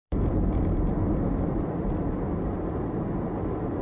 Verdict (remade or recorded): remade